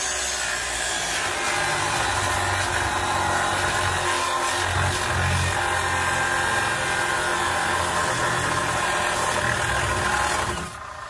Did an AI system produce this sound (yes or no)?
no